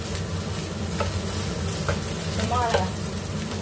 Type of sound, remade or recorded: remade